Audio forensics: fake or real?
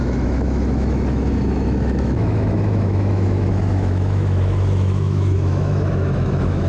fake